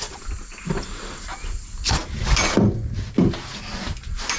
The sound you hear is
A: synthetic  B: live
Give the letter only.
B